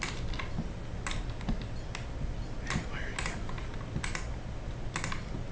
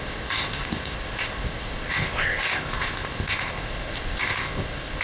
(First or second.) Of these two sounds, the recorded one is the first